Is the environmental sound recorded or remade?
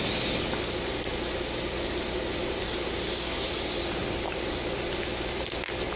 recorded